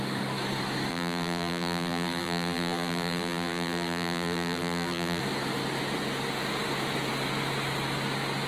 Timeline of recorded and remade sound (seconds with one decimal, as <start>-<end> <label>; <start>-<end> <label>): 0.0-0.9 recorded; 0.9-5.2 remade; 5.2-8.5 recorded